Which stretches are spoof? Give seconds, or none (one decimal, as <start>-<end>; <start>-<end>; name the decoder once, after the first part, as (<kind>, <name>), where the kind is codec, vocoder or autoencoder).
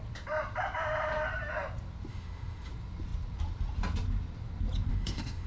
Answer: 2.1-2.7 (autoencoder, DAC-VAE); 4.9-5.5